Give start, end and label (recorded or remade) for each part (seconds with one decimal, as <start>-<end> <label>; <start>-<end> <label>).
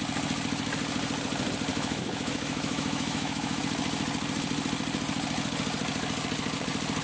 0.0-1.7 recorded; 1.7-3.6 remade; 3.6-7.0 recorded